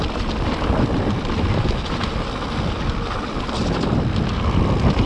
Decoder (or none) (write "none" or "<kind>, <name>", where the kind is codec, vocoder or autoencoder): none